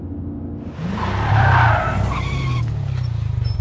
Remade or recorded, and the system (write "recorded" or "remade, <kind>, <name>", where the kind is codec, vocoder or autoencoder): recorded